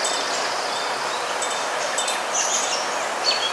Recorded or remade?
recorded